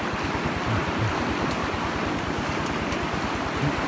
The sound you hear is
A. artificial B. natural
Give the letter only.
B